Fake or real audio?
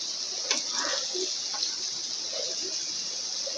real